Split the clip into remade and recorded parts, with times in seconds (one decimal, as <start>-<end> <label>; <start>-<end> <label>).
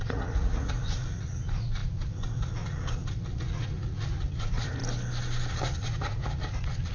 0.0-4.8 remade; 4.8-5.5 recorded; 5.5-6.9 remade